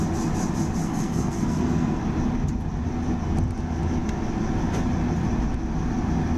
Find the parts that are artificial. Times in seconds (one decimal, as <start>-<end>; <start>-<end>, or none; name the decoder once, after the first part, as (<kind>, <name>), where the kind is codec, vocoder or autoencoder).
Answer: 0.8-2.0 (codec, SNAC)